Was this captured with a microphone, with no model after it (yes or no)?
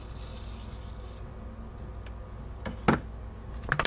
yes